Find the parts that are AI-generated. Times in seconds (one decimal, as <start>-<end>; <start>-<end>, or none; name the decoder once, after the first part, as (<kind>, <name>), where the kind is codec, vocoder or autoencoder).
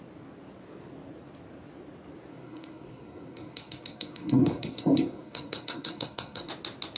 2.3-6.5 (codec, SNAC)